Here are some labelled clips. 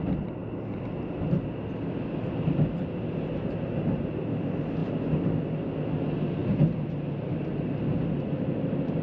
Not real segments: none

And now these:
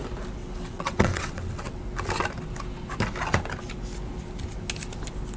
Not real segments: 0.4-1.8 (vocoder, WaveNeXt)

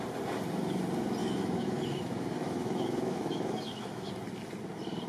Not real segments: 1.2-4.1 (autoencoder, DAC-VAE)

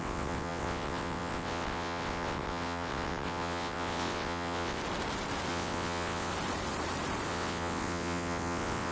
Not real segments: 0.0-4.8 (vocoder, WaveNeXt); 5.5-6.3; 7.3-8.9

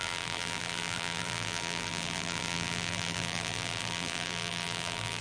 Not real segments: 0.0-5.2 (vocoder, BigVGAN v2)

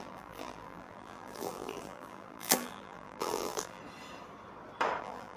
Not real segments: 0.0-3.8 (vocoder, BigVGAN v2); 5.0-5.4

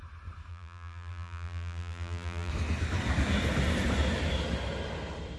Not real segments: 0.5-2.5 (vocoder, BigVGAN v2)